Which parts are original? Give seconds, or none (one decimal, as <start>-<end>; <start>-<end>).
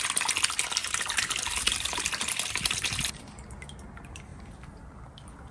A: 0.0-0.8; 3.0-5.5